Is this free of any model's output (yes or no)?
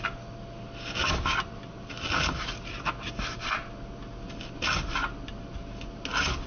yes